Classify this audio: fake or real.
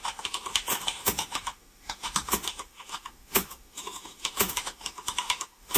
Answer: fake